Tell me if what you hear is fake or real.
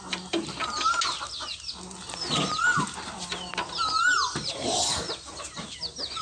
real